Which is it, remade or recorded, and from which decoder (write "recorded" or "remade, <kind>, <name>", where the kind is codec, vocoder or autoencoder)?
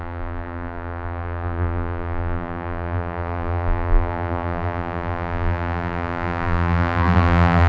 remade, vocoder, BigVGAN v2